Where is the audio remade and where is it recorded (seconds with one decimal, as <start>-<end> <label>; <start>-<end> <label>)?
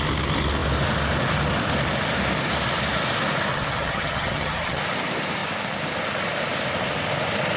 0.0-3.5 recorded; 3.5-4.8 remade; 4.8-7.6 recorded